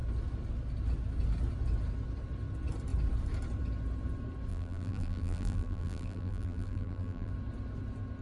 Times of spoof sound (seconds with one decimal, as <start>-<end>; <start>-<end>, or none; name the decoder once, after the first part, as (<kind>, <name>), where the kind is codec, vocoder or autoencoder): 4.5-7.3 (vocoder, BigVGAN v2)